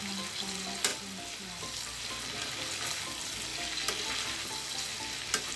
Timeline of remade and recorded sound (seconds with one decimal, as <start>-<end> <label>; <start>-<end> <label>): 0.0-5.6 recorded